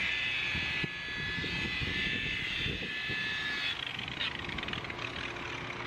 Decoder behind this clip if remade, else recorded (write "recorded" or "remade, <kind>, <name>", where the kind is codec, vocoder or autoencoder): recorded